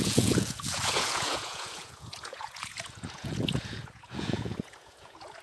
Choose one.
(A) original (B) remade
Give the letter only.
B